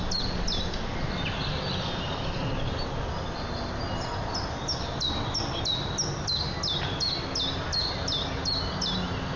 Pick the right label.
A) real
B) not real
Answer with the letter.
A